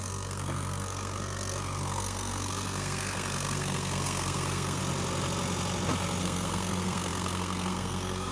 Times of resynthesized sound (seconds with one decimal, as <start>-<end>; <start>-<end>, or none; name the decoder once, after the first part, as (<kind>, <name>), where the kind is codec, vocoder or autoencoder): 0.0-4.8 (codec, SNAC); 6.2-8.3